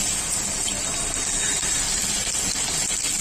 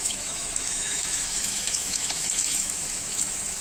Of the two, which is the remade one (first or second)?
second